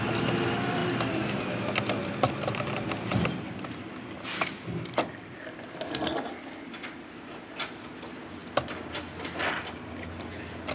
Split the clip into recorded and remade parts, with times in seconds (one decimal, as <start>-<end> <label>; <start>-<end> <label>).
0.0-2.0 recorded; 2.0-6.6 remade; 6.6-10.7 recorded